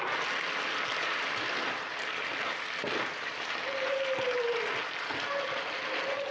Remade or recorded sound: remade